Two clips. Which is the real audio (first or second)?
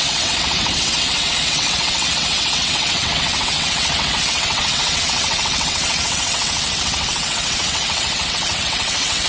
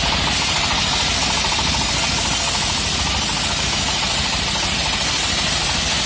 second